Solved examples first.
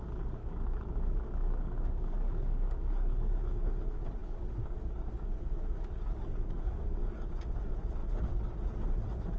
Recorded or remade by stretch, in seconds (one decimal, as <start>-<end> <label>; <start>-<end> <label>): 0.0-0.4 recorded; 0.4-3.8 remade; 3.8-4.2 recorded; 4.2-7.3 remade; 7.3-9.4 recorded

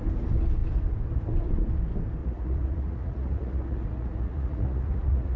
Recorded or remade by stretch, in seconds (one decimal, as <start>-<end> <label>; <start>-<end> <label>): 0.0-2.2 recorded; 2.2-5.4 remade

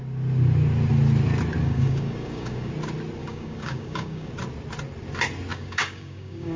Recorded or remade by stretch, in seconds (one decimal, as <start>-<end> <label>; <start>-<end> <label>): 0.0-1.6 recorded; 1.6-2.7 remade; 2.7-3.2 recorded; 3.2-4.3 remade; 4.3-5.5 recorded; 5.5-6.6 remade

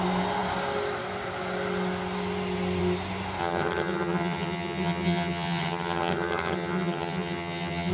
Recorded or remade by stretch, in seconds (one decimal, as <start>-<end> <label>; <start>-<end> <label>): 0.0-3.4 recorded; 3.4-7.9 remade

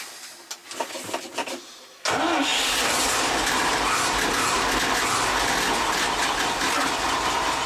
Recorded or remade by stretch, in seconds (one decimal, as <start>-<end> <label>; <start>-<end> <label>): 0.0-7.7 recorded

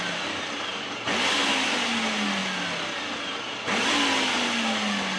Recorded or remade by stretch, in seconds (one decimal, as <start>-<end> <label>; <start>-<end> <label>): 0.0-5.2 recorded

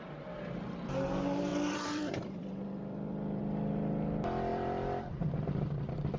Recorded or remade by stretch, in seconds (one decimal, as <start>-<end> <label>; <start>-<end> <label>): 0.0-1.5 recorded; 1.5-3.4 remade; 3.4-4.5 recorded; 4.5-6.2 remade

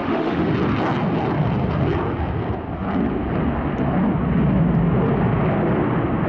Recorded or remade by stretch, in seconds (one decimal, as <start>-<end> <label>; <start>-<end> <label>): 0.0-0.5 remade; 0.5-6.3 recorded